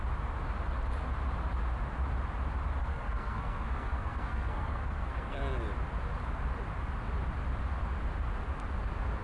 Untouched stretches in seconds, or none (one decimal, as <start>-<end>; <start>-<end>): 0.0-2.8; 5.4-9.2